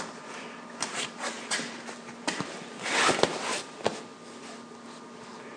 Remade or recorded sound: recorded